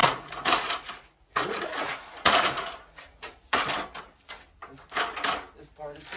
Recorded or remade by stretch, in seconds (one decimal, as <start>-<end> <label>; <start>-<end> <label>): 0.0-3.6 remade; 3.6-6.2 recorded